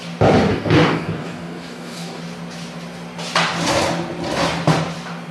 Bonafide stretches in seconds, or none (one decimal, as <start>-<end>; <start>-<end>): 0.0-0.5; 2.2-5.3